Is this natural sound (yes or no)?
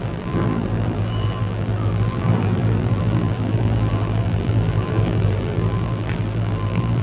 no